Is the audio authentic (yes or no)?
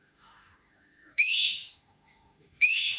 no